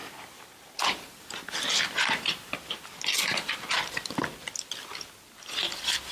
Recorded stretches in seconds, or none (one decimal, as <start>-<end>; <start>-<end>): 0.0-6.1